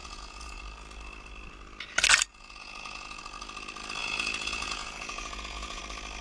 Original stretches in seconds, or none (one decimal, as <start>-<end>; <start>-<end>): 0.6-2.3; 3.2-4.0; 5.8-6.2